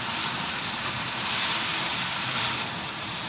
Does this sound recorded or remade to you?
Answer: remade